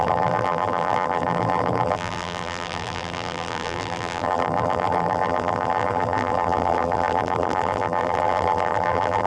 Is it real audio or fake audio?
fake